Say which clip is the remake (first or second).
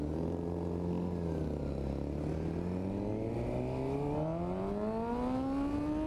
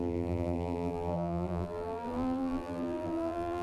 second